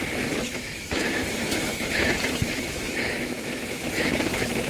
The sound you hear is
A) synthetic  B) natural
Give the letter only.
A